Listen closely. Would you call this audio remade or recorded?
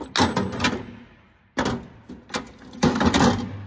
recorded